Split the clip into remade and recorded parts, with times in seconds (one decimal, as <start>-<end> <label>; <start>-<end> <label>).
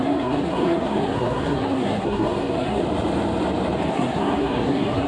0.0-2.8 remade; 2.8-3.9 recorded; 3.9-5.1 remade